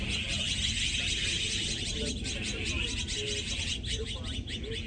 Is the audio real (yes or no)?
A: yes